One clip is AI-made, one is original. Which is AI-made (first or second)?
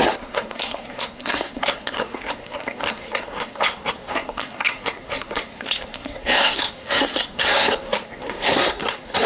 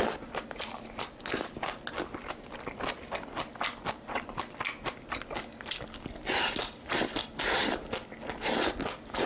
first